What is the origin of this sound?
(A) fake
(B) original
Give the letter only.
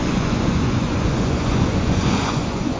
A